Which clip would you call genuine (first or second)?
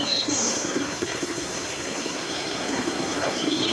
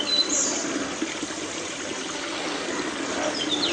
second